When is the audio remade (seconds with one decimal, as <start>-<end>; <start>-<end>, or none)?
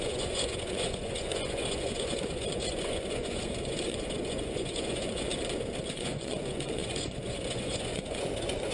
0.0-5.3; 5.9-8.7